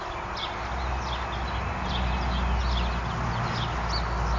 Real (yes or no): yes